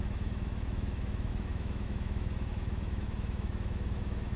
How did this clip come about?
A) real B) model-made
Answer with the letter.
B